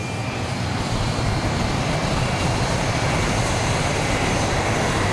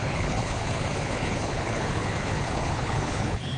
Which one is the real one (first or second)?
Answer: first